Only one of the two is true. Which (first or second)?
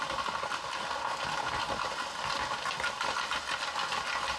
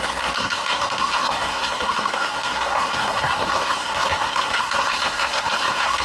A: first